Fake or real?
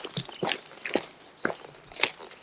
real